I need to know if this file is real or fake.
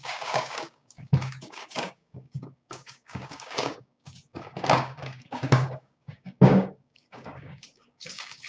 fake